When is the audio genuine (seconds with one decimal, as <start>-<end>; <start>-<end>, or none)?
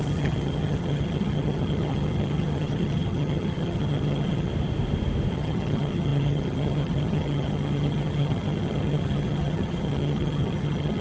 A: 4.5-5.3